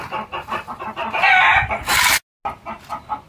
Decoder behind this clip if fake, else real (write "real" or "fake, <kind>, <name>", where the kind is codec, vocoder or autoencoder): real